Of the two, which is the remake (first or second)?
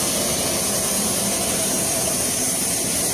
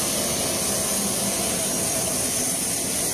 first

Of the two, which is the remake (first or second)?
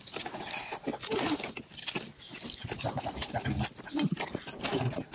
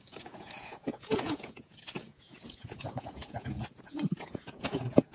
second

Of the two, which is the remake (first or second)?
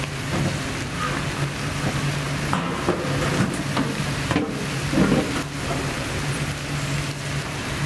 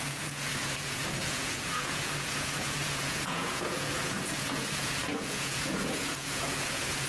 second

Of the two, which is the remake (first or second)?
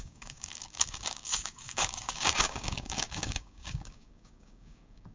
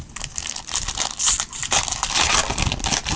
first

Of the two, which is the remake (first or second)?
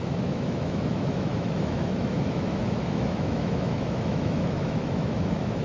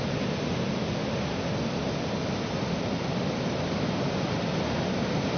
first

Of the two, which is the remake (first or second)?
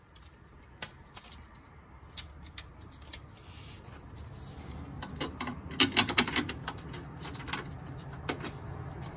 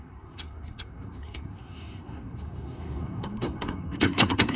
second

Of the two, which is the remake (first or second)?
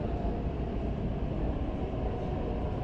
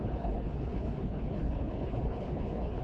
second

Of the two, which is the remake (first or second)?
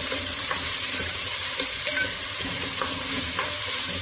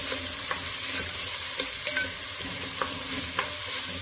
first